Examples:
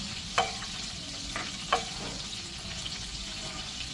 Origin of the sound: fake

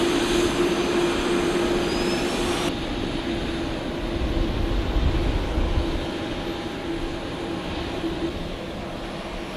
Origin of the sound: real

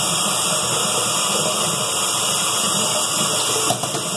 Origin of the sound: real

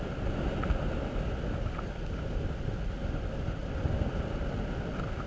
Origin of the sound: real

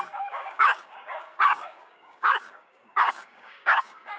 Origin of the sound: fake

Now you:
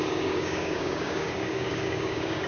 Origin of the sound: fake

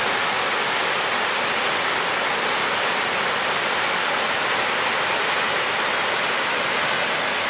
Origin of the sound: real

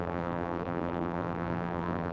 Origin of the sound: fake